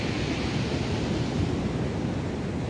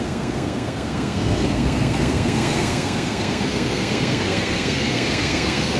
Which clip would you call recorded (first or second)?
first